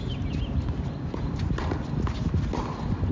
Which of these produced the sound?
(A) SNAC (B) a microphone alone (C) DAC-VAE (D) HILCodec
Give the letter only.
B